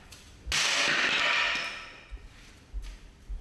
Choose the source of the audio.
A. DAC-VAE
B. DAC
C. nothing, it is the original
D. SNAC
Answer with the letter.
C